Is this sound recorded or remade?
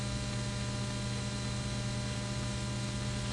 recorded